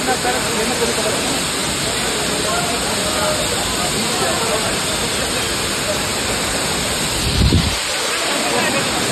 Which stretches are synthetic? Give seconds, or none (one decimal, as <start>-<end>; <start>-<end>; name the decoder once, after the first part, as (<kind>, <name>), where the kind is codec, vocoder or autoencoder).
none